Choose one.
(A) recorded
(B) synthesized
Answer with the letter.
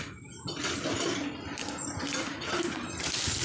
A